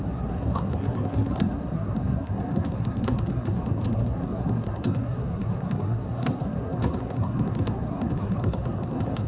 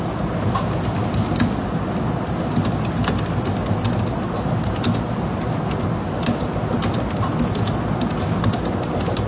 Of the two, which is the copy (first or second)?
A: first